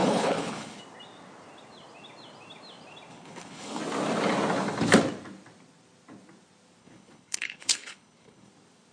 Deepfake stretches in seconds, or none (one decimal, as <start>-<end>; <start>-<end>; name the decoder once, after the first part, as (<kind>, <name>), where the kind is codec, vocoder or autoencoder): 0.0-0.8 (codec, HILCodec); 3.1-3.8; 6.8-8.5